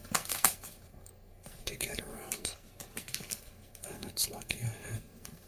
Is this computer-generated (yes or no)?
yes